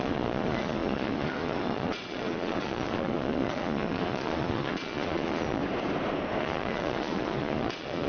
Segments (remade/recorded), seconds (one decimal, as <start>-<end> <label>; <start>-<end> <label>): 0.0-5.6 remade; 5.6-6.4 recorded; 6.4-8.1 remade